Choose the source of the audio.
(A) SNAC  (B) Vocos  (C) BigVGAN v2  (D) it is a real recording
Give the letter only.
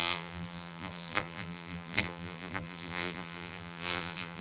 C